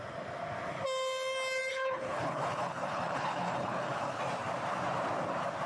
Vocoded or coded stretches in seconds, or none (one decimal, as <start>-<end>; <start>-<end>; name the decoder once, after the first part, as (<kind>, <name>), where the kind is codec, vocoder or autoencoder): 1.7-4.2 (codec, HILCodec)